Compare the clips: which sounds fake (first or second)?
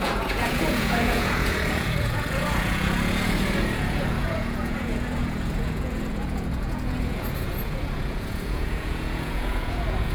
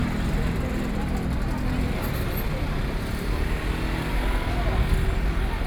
first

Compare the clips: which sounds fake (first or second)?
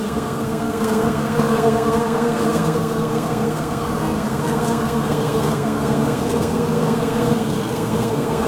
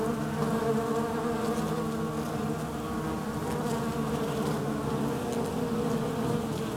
first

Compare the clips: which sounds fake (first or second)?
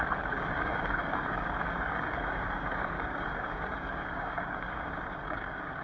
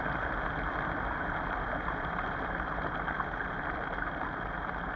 first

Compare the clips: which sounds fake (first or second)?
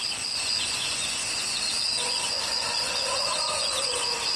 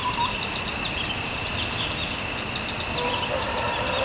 first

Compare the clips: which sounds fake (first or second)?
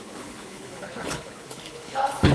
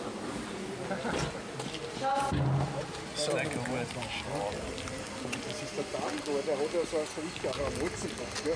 first